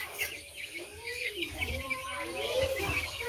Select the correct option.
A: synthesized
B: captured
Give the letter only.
A